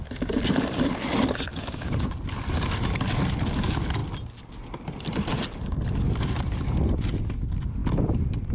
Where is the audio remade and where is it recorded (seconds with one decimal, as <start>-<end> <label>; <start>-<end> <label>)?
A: 0.0-1.5 recorded; 1.5-2.2 remade; 2.2-8.5 recorded